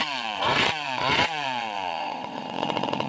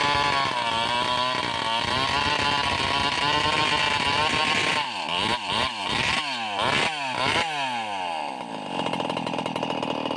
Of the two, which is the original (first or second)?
second